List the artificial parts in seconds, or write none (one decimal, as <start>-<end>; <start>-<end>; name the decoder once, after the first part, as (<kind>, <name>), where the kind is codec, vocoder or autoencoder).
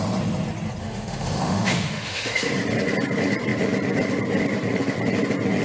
0.8-2.5 (autoencoder, DAC-VAE)